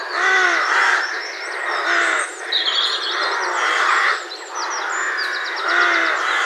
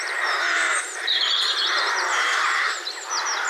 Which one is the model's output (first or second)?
second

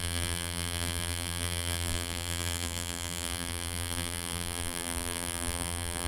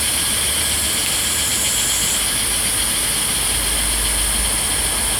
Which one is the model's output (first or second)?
first